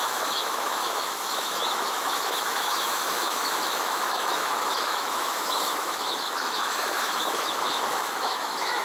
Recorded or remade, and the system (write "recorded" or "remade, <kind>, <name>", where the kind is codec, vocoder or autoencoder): remade, autoencoder, DAC-VAE